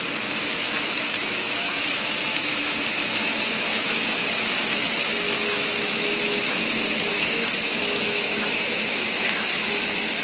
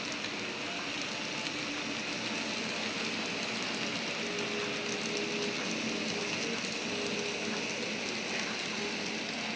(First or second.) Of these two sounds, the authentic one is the second